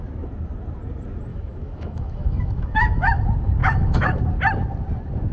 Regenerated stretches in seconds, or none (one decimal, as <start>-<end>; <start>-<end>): 1.3-3.2; 3.6-4.2